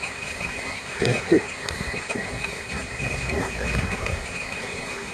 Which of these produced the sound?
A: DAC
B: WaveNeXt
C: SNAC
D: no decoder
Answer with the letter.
C